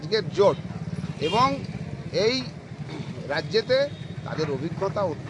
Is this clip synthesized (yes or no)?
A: no